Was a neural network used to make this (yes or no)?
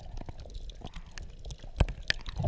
no